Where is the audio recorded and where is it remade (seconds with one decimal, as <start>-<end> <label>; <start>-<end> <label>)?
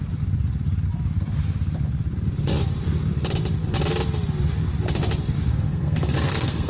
0.0-5.5 recorded; 5.5-6.7 remade